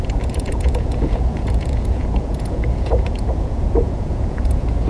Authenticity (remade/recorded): remade